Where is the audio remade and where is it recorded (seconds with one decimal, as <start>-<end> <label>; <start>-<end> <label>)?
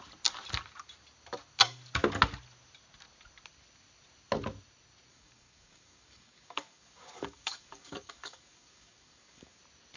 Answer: 0.0-5.1 recorded; 5.1-9.6 remade; 9.6-10.0 recorded